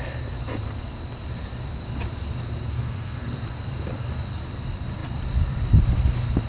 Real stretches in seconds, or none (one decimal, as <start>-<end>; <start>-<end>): 0.0-2.7; 3.4-6.5